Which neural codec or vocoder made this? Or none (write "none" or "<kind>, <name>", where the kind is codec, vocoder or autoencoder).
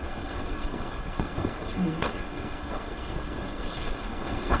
codec, SNAC